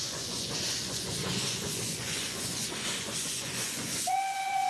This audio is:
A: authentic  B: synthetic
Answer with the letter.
B